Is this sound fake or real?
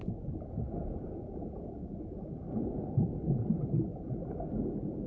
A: real